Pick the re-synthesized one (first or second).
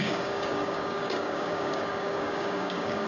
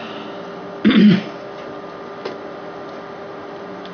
first